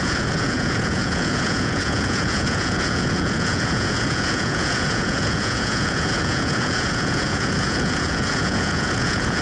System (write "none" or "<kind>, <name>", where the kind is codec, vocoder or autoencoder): vocoder, Vocos